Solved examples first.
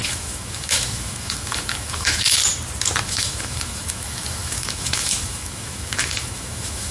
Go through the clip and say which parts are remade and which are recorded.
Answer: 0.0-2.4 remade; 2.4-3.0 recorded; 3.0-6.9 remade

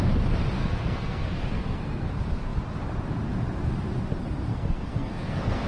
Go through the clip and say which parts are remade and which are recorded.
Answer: 0.0-0.6 recorded; 0.6-2.1 remade; 2.1-4.5 recorded; 4.5-5.7 remade

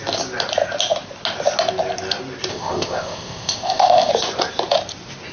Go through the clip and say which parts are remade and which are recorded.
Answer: 0.0-2.5 recorded; 2.5-4.1 remade; 4.1-5.3 recorded